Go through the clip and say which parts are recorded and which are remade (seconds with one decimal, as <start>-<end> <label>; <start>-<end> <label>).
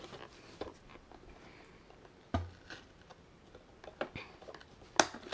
0.0-5.3 recorded